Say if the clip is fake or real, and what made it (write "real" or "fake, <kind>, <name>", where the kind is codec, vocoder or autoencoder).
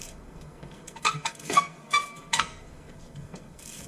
fake, codec, SNAC